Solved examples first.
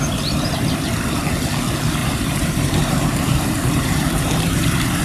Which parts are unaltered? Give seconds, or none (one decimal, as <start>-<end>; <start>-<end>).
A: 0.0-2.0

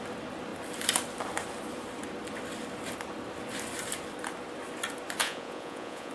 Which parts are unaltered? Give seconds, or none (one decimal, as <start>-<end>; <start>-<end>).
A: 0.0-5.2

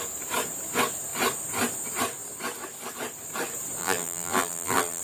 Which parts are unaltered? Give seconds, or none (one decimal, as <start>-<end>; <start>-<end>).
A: 0.0-3.8

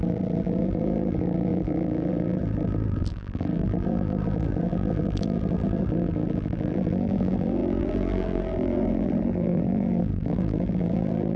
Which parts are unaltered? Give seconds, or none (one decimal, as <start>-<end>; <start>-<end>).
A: none

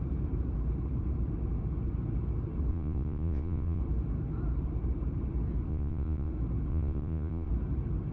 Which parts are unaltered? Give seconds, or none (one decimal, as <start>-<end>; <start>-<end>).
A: 0.0-2.7; 3.8-5.7; 6.3-6.7; 7.5-8.1